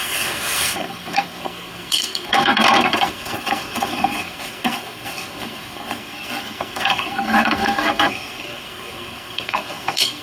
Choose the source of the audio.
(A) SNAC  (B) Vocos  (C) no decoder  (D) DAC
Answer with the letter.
A